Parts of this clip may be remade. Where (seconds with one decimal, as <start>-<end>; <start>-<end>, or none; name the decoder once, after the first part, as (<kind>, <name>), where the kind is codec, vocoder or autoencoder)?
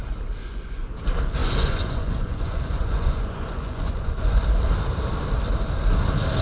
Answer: 0.4-0.9 (vocoder, Vocos); 1.4-4.4